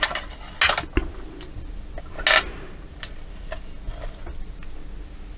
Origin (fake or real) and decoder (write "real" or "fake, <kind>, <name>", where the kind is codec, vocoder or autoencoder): real